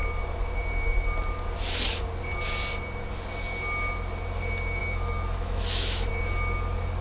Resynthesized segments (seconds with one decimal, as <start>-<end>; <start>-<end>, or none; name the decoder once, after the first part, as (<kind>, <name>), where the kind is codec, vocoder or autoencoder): 4.8-6.1 (autoencoder, DAC-VAE)